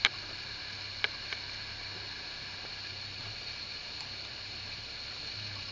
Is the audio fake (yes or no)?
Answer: no